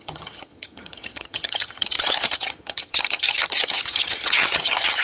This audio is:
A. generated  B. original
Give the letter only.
A